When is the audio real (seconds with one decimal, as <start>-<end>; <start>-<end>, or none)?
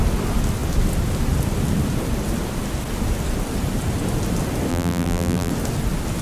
0.0-4.7; 5.5-6.2